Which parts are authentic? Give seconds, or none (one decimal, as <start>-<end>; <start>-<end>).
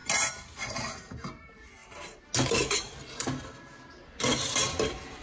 0.0-5.2